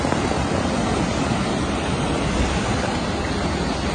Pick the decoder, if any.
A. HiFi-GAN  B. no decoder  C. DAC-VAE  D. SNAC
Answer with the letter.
B